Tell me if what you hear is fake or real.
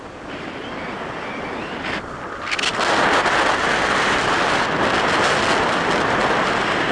real